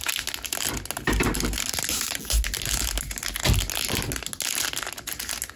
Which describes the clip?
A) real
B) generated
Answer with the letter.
A